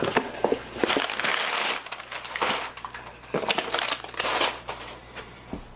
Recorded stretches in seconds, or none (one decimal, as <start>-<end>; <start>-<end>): 0.0-5.8